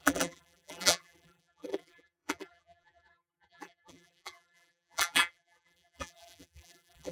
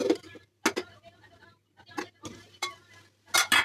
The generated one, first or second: first